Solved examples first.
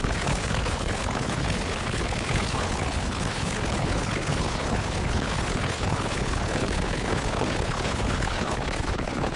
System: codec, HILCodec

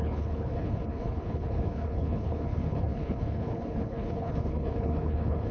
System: codec, HILCodec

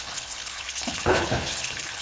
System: codec, HILCodec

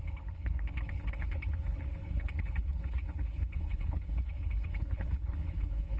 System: codec, HILCodec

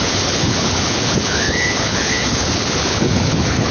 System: codec, HILCodec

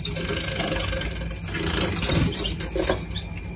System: none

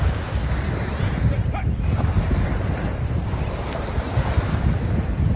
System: none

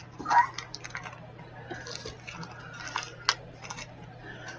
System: none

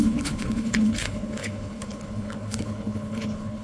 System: codec, HILCodec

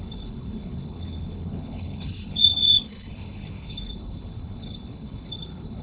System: codec, HILCodec